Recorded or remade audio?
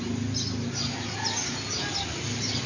recorded